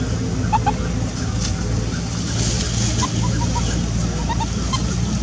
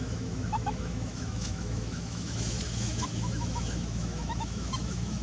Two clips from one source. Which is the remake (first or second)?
second